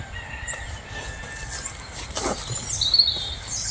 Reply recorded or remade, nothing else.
recorded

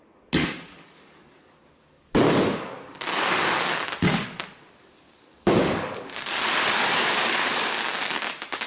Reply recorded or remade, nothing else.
remade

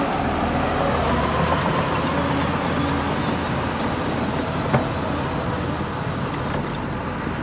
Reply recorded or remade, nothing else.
recorded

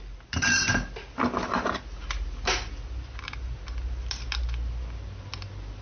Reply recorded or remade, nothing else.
recorded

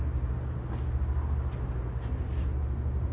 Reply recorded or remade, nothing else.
recorded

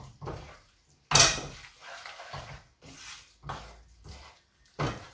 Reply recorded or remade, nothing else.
recorded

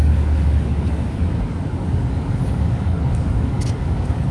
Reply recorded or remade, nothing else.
remade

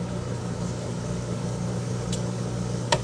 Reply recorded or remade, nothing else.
remade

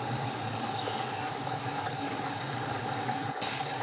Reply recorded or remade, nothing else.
remade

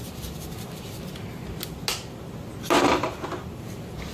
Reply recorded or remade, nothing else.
recorded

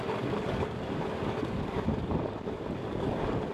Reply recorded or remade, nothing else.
remade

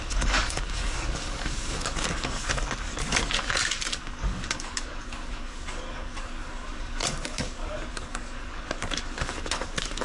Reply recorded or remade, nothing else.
remade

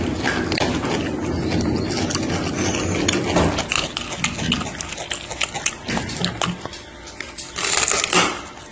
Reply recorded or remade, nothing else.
recorded